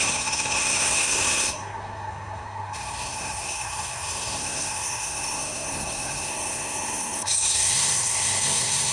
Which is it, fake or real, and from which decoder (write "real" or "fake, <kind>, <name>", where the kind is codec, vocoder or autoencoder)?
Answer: fake, codec, SNAC